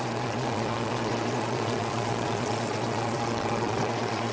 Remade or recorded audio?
remade